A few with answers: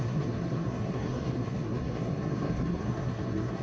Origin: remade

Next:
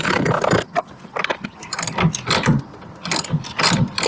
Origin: recorded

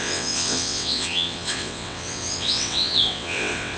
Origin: remade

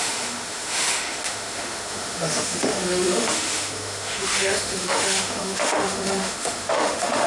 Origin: remade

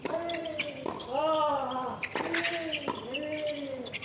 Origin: recorded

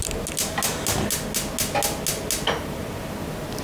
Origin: recorded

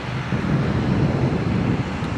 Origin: recorded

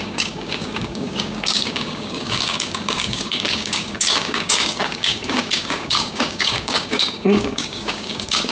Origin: remade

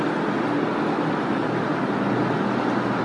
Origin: recorded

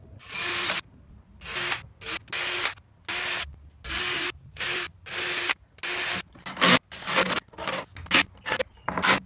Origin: recorded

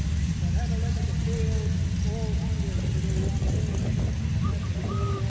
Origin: recorded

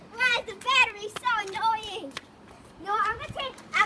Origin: remade